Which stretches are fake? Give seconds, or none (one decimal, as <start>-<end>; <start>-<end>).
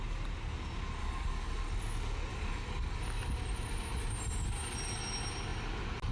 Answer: 1.0-1.8; 2.3-3.0